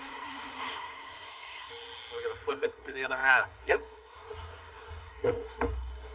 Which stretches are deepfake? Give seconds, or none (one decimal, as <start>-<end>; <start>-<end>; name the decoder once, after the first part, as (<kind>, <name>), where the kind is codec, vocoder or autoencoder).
0.0-1.7 (codec, SNAC); 2.5-6.1